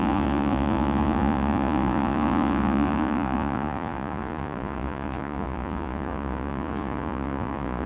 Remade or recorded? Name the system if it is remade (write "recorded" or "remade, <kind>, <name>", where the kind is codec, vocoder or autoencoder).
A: remade, vocoder, Vocos